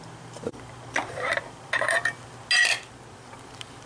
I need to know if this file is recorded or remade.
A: recorded